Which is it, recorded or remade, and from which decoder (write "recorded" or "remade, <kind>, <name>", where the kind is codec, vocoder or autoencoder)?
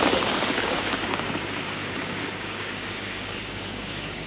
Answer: remade, codec, DAC